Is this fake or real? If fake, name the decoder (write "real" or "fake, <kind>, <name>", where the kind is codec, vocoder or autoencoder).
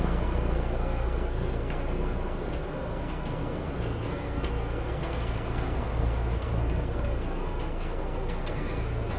fake, codec, SNAC